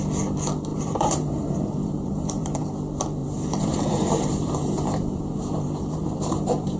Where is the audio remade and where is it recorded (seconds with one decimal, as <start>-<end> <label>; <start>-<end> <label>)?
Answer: 0.0-0.7 recorded; 0.7-2.7 remade; 2.7-3.2 recorded; 3.2-6.8 remade